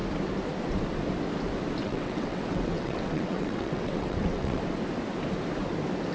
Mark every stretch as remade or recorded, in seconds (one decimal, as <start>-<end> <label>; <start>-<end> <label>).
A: 0.0-1.8 recorded; 1.8-4.6 remade; 4.6-6.1 recorded